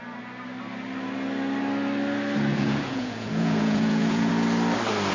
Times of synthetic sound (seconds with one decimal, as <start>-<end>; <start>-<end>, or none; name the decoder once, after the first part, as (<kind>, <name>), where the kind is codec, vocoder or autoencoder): 2.5-4.3 (vocoder, Vocos)